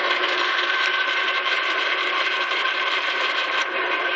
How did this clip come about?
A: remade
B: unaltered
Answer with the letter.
A